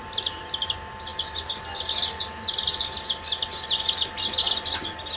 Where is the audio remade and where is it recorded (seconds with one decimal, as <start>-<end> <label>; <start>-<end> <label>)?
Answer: 0.0-5.2 recorded